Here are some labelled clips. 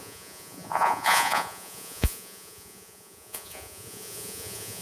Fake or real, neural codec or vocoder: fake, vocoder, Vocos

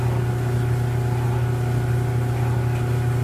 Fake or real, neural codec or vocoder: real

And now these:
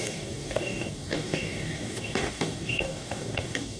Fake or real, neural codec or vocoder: fake, codec, DAC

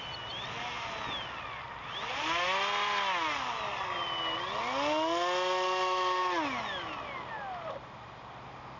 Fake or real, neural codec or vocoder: real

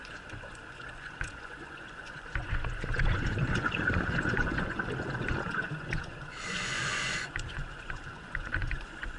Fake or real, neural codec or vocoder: fake, vocoder, Vocos